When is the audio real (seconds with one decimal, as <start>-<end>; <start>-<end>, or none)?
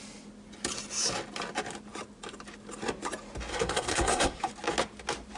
0.0-3.5; 4.4-5.4